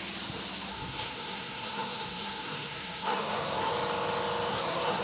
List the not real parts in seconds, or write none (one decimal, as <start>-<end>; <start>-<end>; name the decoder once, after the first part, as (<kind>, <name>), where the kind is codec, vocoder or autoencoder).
0.7-3.7 (codec, SNAC); 4.5-5.0

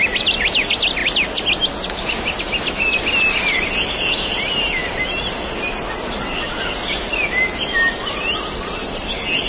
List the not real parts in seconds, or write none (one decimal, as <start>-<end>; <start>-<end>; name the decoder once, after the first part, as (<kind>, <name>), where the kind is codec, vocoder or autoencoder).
none

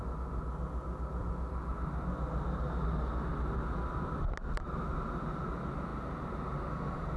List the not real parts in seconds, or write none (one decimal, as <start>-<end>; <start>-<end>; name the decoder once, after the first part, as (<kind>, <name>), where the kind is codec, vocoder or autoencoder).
none

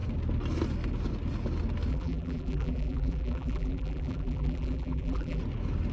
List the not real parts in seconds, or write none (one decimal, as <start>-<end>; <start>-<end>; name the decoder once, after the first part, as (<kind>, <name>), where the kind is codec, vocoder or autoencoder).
1.9-5.4 (vocoder, BigVGAN v2)